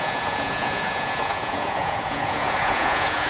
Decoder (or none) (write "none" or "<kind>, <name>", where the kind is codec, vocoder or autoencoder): vocoder, Vocos